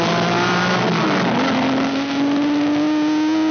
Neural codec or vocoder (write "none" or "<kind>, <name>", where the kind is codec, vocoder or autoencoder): none